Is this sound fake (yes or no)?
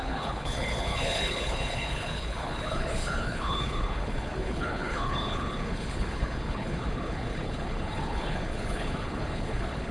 yes